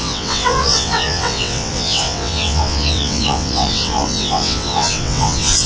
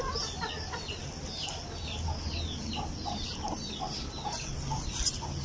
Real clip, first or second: second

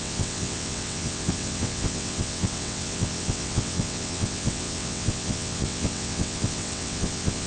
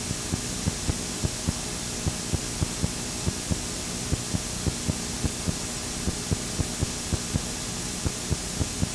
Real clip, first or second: second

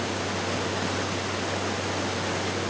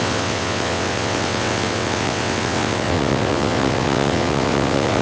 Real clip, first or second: first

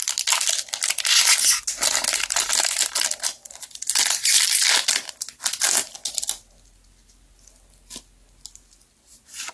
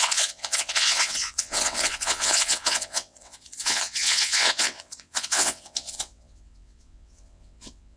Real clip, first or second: first